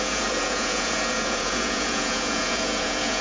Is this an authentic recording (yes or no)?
no